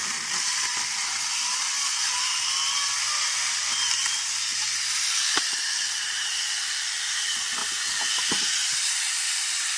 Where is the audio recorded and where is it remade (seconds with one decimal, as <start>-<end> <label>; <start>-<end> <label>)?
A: 0.0-9.8 recorded

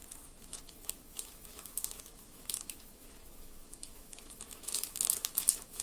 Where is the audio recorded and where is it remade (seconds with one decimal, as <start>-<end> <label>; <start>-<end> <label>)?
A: 0.0-5.8 remade

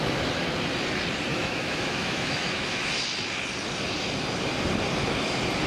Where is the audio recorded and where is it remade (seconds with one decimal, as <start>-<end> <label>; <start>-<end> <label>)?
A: 0.0-1.3 recorded; 1.3-2.9 remade; 2.9-5.7 recorded

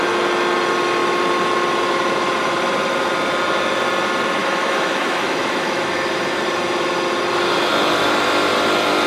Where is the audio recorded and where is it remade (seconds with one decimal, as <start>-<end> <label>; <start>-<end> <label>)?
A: 0.0-4.4 recorded; 4.4-6.4 remade; 6.4-9.1 recorded